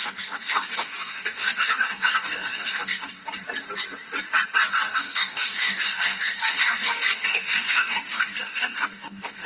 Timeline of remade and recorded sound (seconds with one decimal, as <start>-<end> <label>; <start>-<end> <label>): 0.0-3.2 remade; 3.2-4.7 recorded; 4.7-9.5 remade